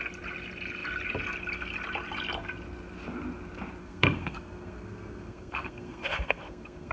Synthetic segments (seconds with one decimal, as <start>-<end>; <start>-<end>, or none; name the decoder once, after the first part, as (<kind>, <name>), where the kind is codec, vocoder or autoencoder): 3.8-6.9 (codec, SNAC)